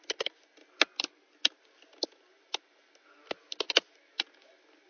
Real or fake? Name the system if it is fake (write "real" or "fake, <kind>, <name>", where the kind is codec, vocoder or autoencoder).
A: real